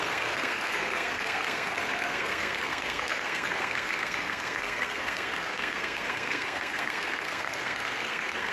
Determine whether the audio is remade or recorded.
remade